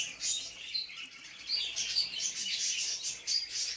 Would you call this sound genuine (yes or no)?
no